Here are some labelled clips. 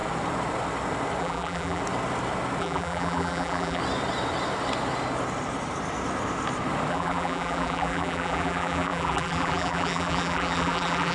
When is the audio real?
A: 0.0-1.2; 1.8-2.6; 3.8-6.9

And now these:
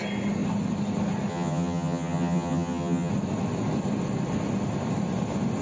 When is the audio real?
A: 0.0-1.3; 3.1-5.6

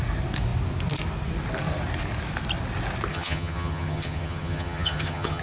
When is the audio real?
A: 0.0-3.1

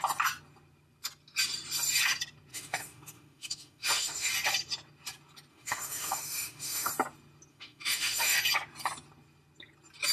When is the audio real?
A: 0.0-2.5; 4.3-5.5; 6.9-7.5; 8.4-10.1

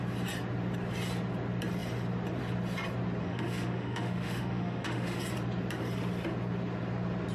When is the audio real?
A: 0.0-3.2; 5.2-7.3

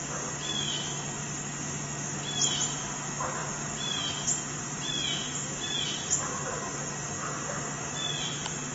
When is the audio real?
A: 0.0-8.7

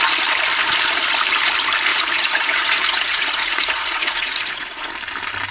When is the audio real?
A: 0.0-1.9; 4.9-5.5